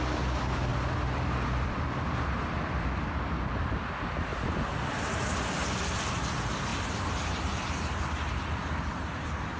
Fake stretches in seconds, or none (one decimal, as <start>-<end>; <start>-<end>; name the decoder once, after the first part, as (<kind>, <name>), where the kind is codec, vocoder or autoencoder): 0.7-3.1 (vocoder, BigVGAN v2); 4.3-6.1; 6.7-8.3